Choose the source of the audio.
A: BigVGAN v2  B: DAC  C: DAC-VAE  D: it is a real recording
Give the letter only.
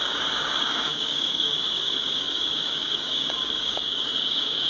B